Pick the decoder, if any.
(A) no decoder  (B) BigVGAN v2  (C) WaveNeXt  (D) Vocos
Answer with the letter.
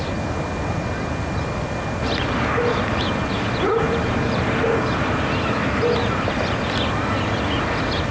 A